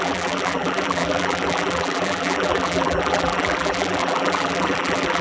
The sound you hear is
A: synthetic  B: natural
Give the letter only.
A